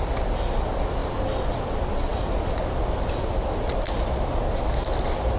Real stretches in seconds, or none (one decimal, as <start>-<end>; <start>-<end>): 0.0-5.4